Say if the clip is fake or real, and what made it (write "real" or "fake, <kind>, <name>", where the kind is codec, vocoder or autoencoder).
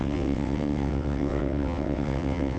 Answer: fake, vocoder, WaveNeXt